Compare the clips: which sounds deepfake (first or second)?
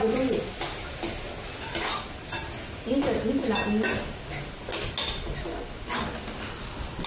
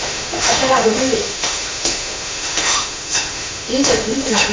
second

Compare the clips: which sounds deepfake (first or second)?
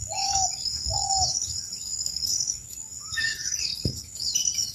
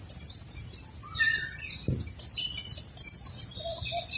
first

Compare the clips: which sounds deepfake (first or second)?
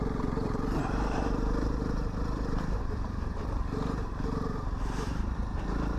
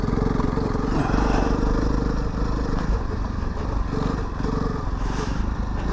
first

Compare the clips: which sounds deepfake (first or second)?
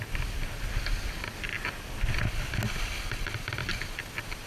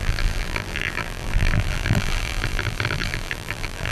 second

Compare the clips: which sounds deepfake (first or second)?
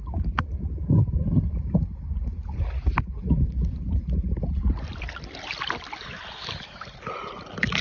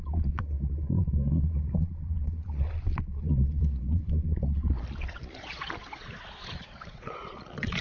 second